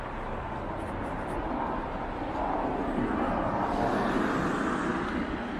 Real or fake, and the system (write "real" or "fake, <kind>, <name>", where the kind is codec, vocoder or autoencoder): real